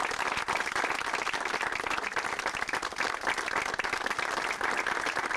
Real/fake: real